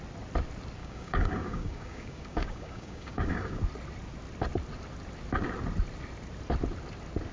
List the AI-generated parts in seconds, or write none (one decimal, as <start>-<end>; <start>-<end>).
0.8-3.6